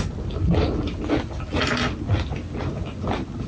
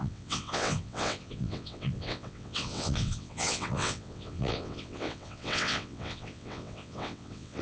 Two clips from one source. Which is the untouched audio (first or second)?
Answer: first